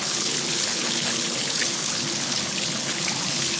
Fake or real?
fake